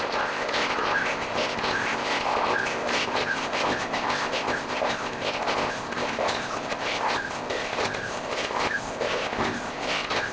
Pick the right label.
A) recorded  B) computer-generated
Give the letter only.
B